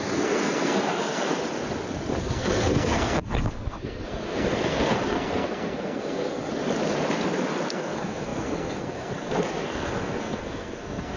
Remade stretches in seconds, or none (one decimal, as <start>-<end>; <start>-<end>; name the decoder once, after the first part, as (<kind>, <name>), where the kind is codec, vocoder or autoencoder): 0.0-1.3 (codec, SNAC); 2.2-6.5; 7.7-11.2